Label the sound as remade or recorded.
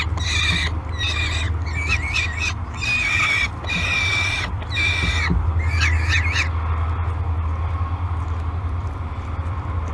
recorded